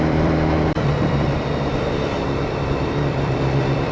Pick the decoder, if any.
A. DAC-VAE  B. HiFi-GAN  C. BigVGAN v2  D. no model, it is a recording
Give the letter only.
C